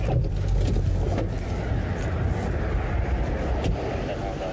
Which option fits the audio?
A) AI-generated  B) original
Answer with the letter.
B